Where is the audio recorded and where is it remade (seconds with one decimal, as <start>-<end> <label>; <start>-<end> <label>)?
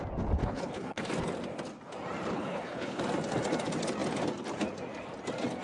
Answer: 0.0-0.4 recorded; 0.4-1.0 remade; 1.0-2.3 recorded; 2.3-3.0 remade; 3.0-5.6 recorded